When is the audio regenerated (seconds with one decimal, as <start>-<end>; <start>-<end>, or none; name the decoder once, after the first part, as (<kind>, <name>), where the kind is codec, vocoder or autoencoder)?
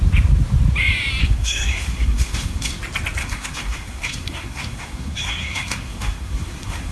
1.2-2.8 (codec, SNAC); 3.2-6.9